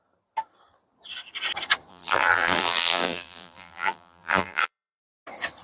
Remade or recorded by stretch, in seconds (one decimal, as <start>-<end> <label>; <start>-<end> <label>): 0.0-1.9 recorded; 1.9-5.0 remade; 5.0-5.6 recorded